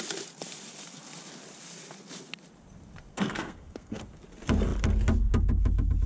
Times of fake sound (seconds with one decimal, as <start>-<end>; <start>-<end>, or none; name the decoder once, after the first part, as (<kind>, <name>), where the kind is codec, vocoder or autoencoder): 3.1-4.0 (codec, SNAC)